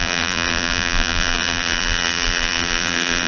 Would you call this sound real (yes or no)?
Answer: no